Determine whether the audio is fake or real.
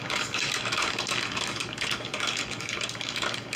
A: fake